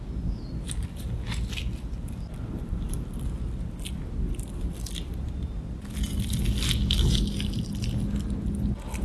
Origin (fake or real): real